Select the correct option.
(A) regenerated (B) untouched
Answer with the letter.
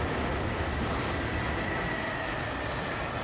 B